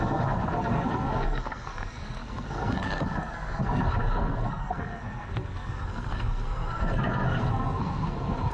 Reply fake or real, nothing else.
fake